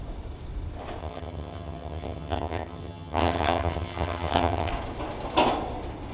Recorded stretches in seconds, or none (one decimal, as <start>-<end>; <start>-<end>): 0.0-1.0; 4.7-6.1